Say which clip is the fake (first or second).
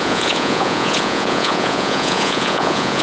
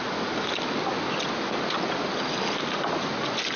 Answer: first